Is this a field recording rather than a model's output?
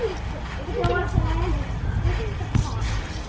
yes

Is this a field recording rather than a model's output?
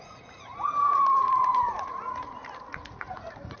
no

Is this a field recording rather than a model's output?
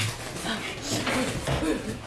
yes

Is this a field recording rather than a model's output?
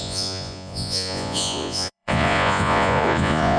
no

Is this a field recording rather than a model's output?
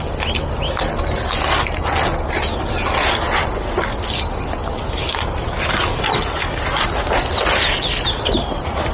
yes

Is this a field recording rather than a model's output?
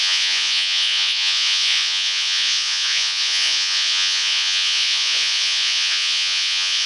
no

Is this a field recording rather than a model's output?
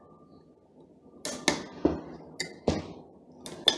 yes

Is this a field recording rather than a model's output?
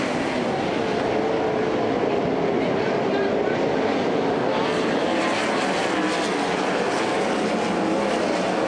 yes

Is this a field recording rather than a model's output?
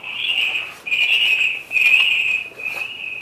yes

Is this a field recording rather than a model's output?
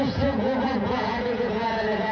no